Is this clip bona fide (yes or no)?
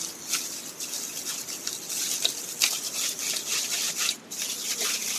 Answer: yes